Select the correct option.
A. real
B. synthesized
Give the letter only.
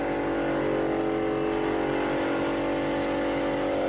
A